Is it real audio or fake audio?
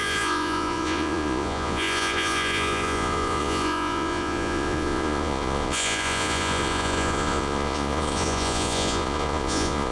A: fake